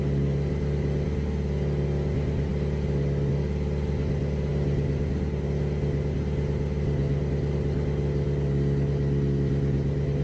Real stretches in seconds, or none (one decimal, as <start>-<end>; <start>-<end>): 0.0-10.2